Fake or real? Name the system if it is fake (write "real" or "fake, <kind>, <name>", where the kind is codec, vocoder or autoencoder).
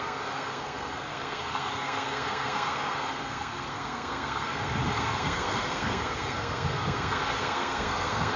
fake, codec, SNAC